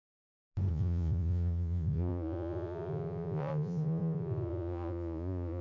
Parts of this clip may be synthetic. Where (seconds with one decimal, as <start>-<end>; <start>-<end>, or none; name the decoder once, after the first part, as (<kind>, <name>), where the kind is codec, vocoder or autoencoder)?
0.7-5.6 (vocoder, Vocos)